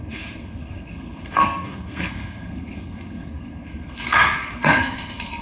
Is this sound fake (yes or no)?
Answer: yes